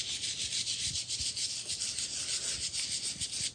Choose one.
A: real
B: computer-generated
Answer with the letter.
A